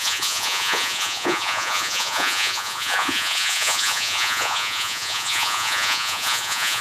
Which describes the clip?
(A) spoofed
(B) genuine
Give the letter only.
A